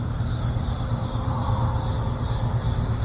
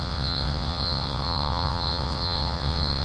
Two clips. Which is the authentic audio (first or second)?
first